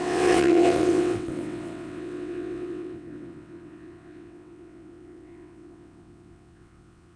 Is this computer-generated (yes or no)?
yes